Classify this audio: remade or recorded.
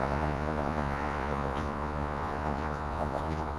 remade